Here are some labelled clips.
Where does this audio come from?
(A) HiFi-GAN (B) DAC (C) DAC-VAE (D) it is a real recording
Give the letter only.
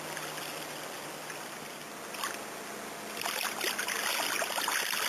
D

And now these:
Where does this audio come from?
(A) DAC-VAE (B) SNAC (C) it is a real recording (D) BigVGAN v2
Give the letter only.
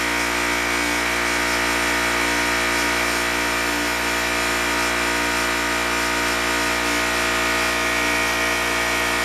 C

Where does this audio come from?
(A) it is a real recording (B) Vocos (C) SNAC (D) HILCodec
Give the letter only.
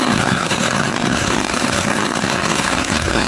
C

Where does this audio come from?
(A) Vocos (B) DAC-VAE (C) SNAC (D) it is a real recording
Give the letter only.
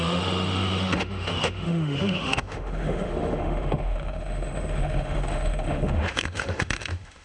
B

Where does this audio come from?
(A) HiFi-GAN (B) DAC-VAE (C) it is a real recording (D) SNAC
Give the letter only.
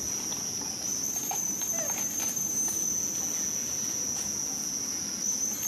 C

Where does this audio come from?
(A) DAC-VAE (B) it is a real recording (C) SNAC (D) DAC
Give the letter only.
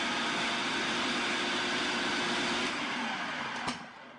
B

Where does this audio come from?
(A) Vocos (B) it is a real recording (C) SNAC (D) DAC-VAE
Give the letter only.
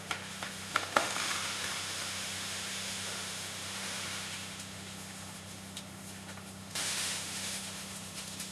D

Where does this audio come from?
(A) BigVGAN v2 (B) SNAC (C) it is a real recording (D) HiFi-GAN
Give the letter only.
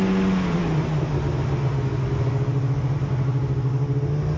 C